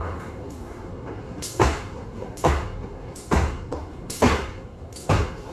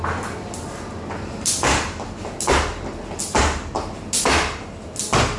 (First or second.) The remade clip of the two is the first